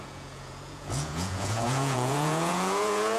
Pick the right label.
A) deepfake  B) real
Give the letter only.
A